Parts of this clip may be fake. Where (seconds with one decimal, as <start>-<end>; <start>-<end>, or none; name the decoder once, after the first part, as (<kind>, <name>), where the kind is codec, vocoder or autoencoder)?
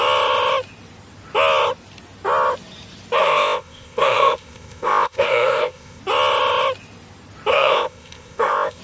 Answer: 3.2-6.0 (codec, ZipCodec); 7.5-8.8